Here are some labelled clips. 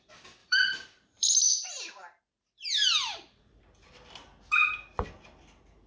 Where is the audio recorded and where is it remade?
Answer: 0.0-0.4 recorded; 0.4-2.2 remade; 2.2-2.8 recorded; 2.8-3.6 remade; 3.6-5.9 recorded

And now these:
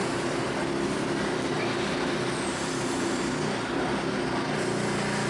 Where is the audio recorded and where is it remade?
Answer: 0.0-5.3 recorded